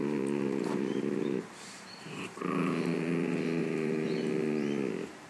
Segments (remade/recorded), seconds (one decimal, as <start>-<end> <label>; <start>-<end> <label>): 0.0-2.2 remade; 2.2-3.6 recorded; 3.6-4.3 remade; 4.3-5.3 recorded